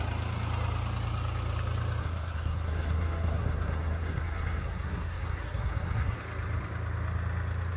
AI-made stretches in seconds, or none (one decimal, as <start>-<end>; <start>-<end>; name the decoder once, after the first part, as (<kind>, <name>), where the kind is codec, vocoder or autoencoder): 2.0-6.2 (codec, SNAC)